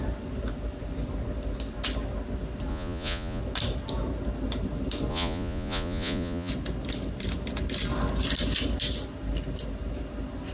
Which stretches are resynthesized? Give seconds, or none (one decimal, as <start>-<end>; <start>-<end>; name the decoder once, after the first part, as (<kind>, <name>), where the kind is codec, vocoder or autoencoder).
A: 2.7-3.4 (vocoder, Vocos); 5.1-6.5